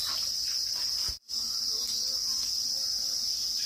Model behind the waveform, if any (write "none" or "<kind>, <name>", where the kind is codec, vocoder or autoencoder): none